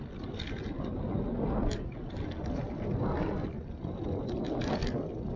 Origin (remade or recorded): recorded